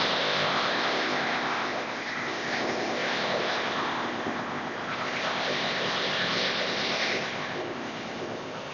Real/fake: fake